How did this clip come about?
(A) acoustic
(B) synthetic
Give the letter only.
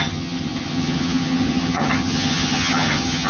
B